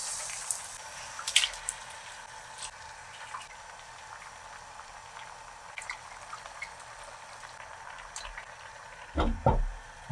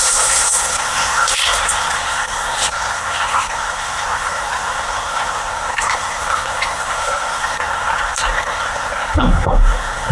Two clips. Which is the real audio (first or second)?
first